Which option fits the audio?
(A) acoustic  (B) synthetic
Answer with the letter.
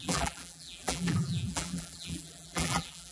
B